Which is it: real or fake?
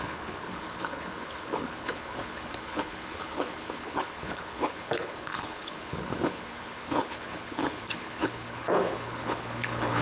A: fake